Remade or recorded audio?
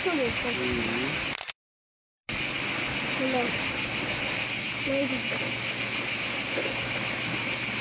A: recorded